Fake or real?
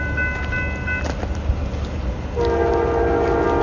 real